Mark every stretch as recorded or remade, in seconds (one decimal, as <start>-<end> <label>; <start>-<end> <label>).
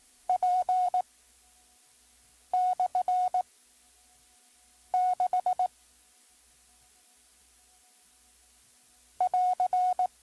0.0-0.9 remade; 0.9-10.2 recorded